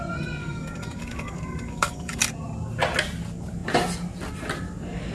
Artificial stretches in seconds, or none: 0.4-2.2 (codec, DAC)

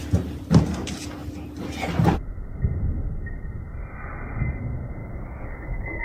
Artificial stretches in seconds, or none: 5.0-6.0 (codec, DAC)

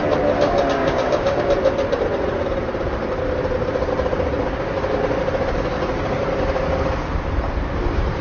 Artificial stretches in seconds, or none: 0.8-1.4 (codec, DAC)

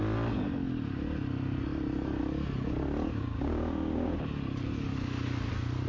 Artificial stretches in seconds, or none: 3.1-4.2 (codec, DAC)